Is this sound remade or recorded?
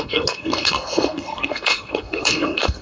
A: remade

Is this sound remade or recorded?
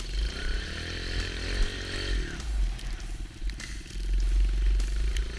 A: recorded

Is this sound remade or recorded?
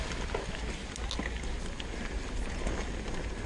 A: recorded